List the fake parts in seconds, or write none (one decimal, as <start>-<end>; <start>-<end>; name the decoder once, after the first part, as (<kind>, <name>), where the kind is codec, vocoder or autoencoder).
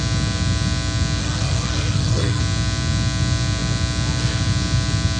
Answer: 1.2-2.4 (codec, SNAC)